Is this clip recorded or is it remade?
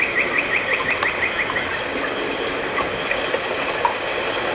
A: recorded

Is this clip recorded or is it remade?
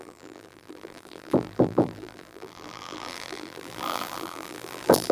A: remade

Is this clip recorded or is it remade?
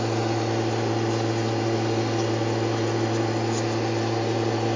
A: recorded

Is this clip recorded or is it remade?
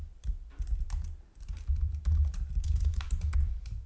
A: remade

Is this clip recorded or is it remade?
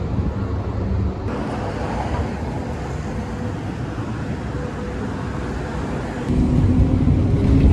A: recorded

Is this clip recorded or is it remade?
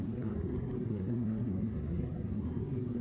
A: remade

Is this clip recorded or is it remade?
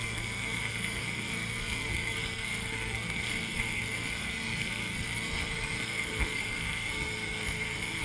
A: remade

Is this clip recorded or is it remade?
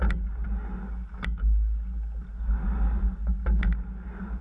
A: recorded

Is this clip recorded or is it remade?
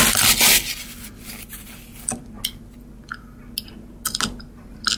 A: recorded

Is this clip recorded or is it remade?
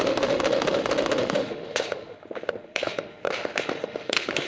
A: remade